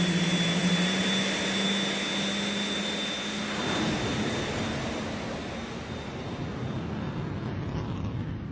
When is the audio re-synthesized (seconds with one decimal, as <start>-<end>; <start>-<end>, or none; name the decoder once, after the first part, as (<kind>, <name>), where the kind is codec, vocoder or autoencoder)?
none